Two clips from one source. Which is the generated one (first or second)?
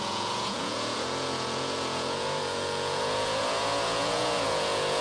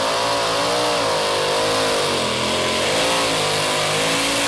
first